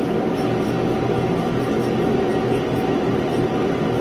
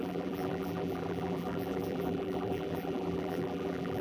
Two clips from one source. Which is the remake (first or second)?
second